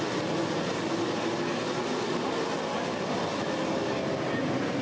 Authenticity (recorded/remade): recorded